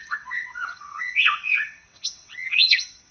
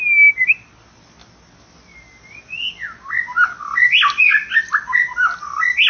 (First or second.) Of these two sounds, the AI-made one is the first